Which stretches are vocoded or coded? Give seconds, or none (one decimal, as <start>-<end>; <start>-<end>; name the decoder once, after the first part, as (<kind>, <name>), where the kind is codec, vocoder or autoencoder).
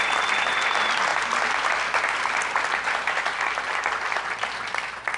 none